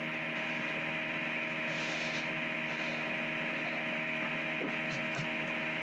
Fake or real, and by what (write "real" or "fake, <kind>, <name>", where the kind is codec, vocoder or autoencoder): real